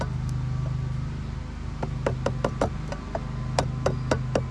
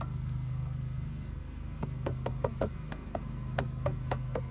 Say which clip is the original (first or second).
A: first